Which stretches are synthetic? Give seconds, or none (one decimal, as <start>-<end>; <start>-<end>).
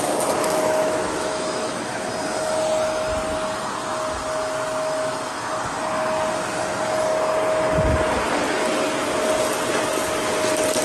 0.4-2.1